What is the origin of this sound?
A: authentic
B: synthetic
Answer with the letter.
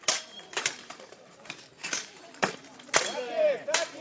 B